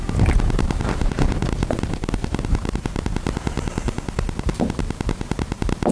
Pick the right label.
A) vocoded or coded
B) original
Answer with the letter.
A